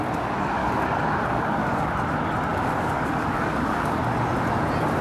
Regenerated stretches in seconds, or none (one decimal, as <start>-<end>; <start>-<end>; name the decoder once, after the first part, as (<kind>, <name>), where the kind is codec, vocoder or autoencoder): 0.6-1.9 (codec, DAC); 2.5-4.0